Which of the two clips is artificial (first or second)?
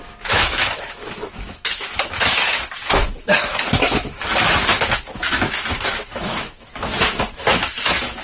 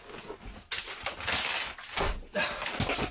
first